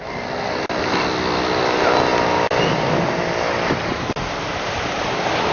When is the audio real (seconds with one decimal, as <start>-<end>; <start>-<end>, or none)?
0.0-5.5

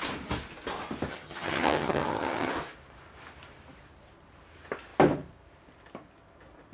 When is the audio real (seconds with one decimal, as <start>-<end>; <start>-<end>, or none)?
0.0-1.1; 2.5-6.7

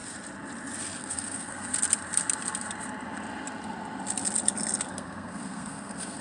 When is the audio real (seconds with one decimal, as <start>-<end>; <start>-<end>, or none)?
0.0-1.0; 1.7-4.9

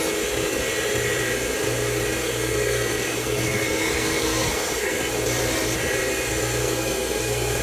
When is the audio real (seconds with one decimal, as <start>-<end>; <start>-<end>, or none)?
0.0-2.2; 5.0-6.6

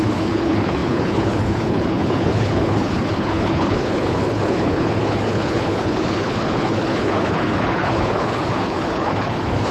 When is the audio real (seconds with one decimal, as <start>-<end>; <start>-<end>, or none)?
none

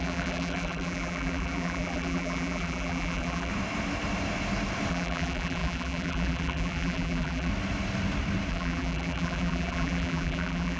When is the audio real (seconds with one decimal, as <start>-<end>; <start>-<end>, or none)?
3.5-4.9; 7.5-8.5

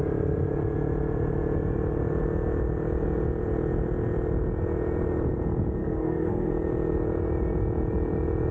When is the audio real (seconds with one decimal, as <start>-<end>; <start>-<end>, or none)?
0.0-5.8; 6.5-8.5